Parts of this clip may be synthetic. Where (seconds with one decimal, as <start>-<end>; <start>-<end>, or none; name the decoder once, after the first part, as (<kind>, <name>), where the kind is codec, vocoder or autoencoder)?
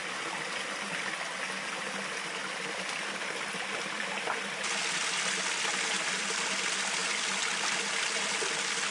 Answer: none